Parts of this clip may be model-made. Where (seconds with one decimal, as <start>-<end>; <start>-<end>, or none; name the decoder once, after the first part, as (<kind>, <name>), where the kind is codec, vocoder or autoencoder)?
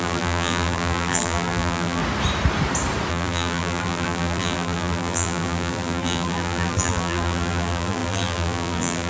0.0-2.0 (vocoder, BigVGAN v2); 3.1-9.1